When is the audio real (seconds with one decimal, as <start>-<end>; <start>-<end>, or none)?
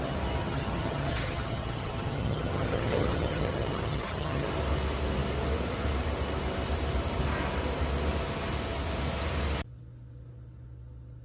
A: 0.0-0.4; 4.5-11.2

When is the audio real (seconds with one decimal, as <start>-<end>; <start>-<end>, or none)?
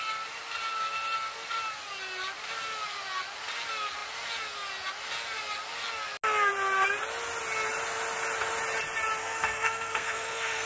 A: 0.0-9.2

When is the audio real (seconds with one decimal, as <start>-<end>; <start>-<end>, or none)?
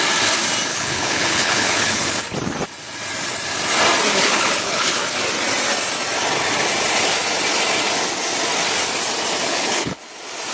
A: 0.0-0.7; 2.2-4.1; 5.0-9.4; 10.0-10.5